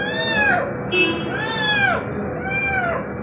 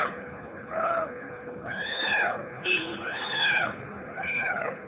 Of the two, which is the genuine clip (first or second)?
first